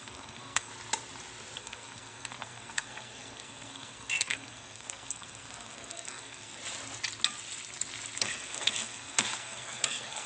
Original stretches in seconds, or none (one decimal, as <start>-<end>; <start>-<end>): 0.7-1.6; 6.6-8.2

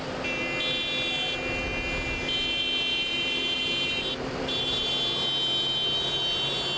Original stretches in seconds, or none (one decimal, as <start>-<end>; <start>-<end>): 0.0-2.9; 4.9-6.8

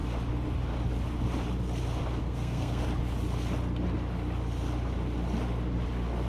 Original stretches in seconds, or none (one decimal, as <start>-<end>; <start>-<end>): 0.0-2.2; 2.8-6.3

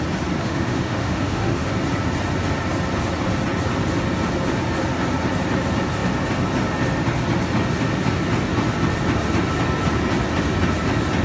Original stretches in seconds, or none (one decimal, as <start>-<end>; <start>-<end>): 0.0-0.4; 1.7-11.2

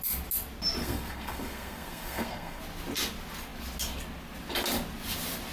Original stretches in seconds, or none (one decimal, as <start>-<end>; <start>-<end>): 0.0-0.8; 2.6-5.5

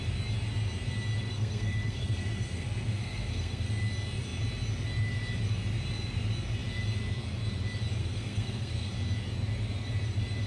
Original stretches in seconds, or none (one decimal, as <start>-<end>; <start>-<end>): 0.0-1.2; 3.7-8.0; 8.9-10.5